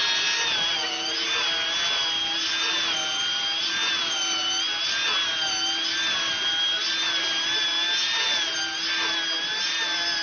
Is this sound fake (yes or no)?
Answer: no